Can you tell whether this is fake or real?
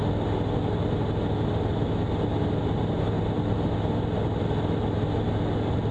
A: real